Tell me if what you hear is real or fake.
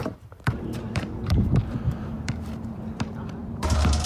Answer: fake